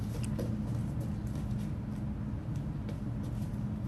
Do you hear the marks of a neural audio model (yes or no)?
no